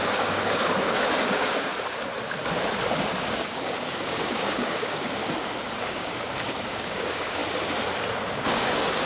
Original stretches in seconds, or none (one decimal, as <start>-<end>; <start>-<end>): 1.7-3.2; 5.2-5.8; 7.4-8.3